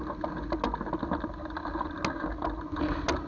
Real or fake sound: real